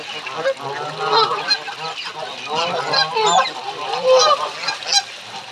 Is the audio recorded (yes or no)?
yes